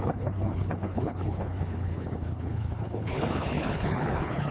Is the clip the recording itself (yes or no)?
no